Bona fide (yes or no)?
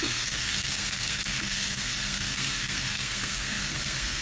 no